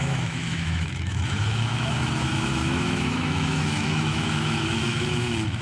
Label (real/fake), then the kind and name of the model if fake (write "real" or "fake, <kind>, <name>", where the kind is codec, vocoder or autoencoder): fake, autoencoder, DAC-VAE